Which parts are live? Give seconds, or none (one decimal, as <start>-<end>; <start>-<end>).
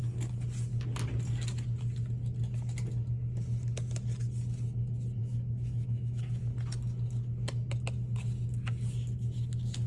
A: 0.0-5.2; 6.4-9.9